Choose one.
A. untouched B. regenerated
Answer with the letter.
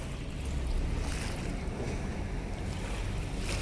A